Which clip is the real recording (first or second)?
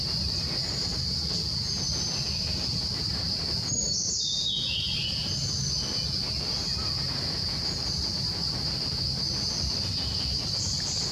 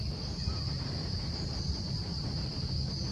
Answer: first